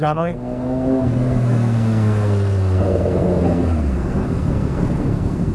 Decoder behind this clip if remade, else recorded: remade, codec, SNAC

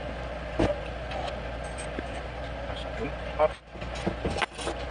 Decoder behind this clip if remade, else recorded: recorded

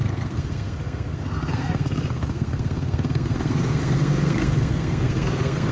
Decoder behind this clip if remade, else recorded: remade, codec, SNAC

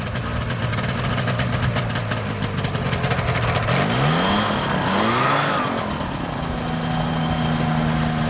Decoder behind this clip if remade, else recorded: recorded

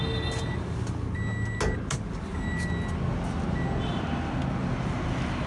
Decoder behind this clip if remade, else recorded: recorded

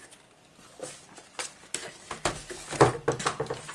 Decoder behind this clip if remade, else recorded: recorded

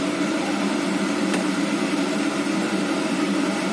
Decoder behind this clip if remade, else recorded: recorded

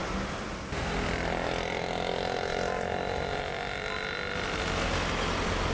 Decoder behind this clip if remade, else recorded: recorded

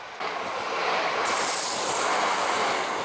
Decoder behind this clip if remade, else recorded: recorded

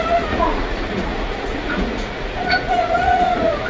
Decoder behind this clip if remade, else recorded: remade, vocoder, Vocos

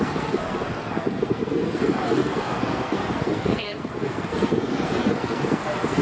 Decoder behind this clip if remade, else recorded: remade, codec, SNAC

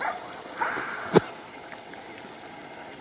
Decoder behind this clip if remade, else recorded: recorded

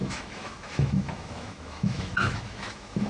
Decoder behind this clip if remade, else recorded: remade, autoencoder, DAC-VAE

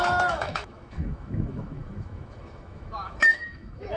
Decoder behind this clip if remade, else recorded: remade, autoencoder, DAC-VAE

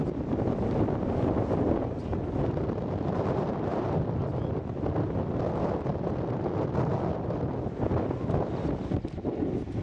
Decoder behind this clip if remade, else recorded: recorded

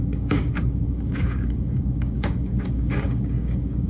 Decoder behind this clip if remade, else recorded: remade, codec, DAC